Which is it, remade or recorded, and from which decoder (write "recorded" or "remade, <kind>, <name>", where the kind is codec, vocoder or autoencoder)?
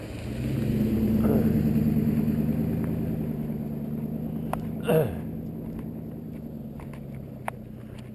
recorded